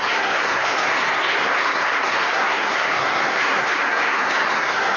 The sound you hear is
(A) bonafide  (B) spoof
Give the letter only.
B